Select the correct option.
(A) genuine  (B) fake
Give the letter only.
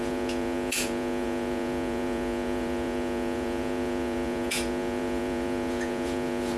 B